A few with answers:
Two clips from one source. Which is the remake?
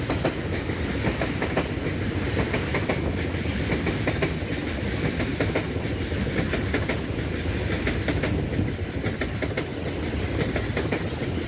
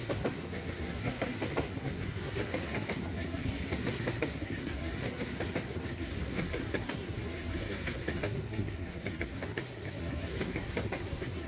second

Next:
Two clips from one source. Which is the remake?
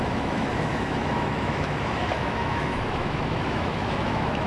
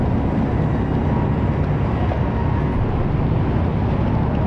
first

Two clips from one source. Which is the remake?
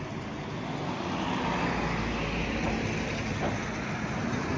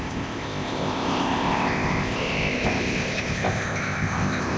second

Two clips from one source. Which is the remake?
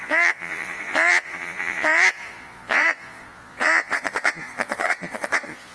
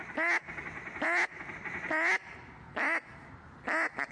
first